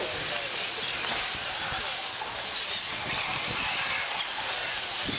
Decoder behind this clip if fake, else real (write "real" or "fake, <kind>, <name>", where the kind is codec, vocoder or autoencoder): real